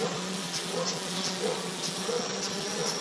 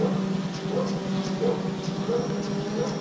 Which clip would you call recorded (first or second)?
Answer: second